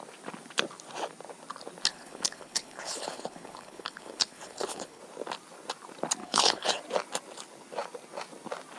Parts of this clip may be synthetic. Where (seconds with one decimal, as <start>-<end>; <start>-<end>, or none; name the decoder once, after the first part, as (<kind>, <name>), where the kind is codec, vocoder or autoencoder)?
1.9-5.0 (codec, HILCodec); 6.2-6.8